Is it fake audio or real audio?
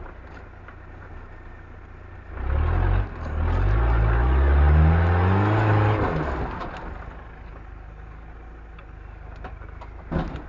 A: real